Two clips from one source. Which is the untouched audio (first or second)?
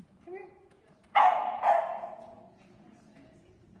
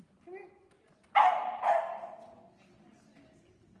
second